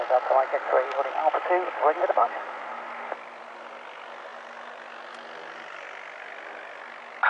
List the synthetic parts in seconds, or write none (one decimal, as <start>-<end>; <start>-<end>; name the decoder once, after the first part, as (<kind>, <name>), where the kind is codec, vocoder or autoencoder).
none